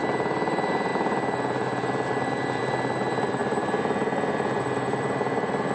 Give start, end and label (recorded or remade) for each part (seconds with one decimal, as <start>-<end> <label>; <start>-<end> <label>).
0.0-5.7 recorded